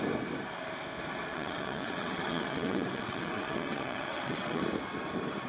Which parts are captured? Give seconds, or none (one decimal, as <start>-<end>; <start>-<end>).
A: 0.0-1.3; 4.6-5.5